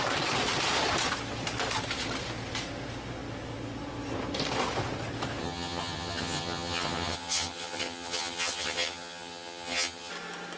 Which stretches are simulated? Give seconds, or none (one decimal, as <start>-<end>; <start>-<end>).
5.4-10.1